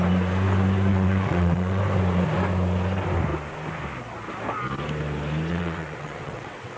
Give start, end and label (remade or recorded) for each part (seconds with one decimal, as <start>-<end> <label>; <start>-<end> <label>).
0.0-0.9 recorded; 0.9-1.8 remade; 1.8-5.5 recorded; 5.5-6.8 remade